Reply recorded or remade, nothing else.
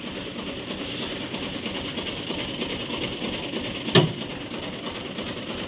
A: recorded